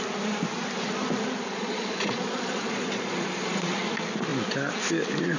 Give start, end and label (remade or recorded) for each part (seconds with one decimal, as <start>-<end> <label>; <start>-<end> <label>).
0.0-1.5 recorded; 1.5-3.8 remade; 3.8-5.4 recorded